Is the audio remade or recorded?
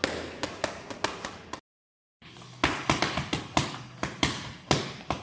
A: recorded